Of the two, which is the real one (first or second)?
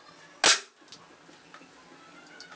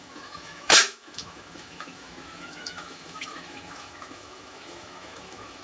first